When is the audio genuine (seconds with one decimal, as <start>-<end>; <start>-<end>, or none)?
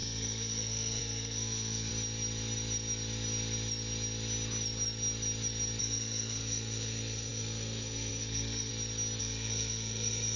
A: 1.9-5.8; 8.7-9.2